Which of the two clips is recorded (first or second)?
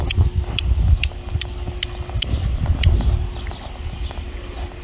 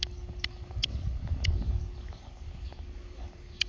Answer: first